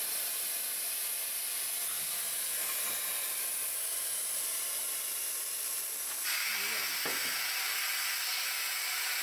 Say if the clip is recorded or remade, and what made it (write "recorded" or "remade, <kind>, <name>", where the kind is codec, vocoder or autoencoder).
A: recorded